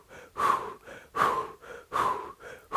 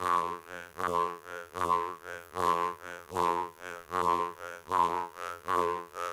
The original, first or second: first